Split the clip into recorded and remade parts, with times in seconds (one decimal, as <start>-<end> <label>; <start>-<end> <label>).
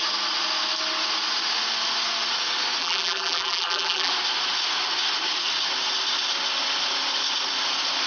0.0-2.8 recorded; 2.8-4.1 remade; 4.1-8.1 recorded